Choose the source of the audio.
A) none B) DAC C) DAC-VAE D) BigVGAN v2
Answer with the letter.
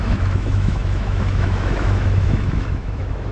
C